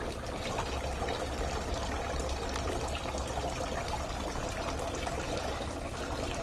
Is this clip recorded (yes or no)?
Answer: yes